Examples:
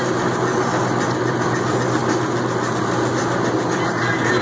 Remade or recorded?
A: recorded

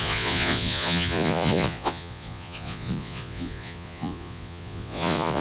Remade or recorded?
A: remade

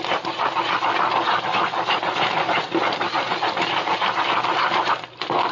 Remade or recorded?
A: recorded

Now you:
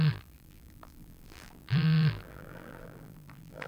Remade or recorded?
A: remade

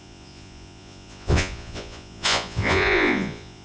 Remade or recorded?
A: remade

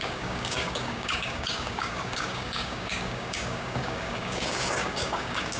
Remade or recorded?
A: remade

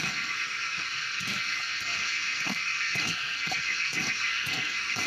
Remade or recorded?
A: remade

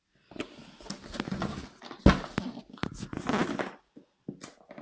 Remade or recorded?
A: recorded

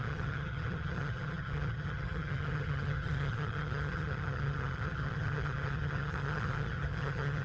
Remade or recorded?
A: remade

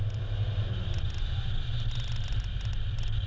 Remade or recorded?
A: recorded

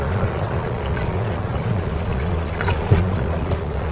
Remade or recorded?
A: remade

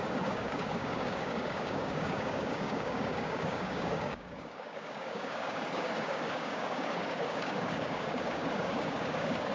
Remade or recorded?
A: remade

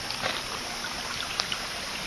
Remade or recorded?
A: remade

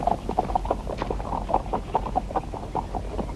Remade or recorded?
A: recorded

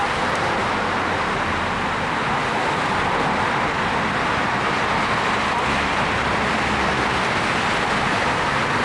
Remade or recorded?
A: recorded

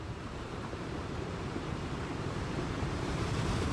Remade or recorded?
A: remade